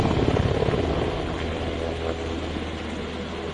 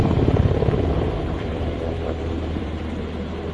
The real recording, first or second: first